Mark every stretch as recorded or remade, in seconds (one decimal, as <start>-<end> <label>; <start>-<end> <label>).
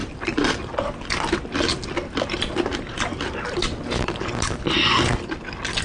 0.0-0.6 remade; 0.6-2.7 recorded; 2.7-3.6 remade; 3.6-5.8 recorded